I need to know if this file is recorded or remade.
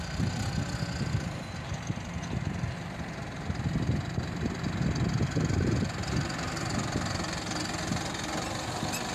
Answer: recorded